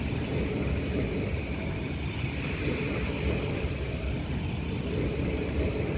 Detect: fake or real fake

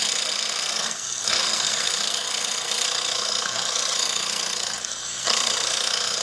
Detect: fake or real fake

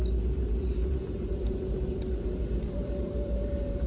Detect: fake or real fake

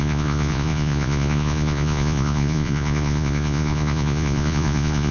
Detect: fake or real fake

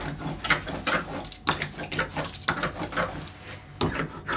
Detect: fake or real real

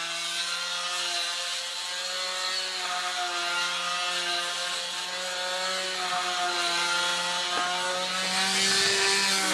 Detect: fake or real real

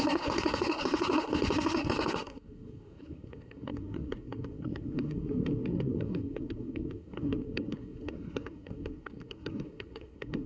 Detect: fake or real fake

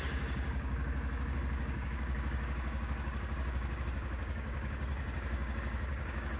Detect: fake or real fake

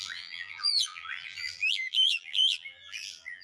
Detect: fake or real fake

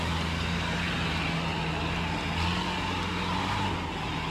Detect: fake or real real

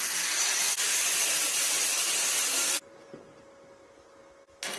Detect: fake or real real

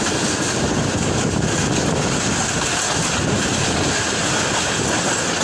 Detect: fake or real real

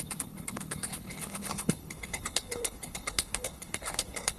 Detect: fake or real fake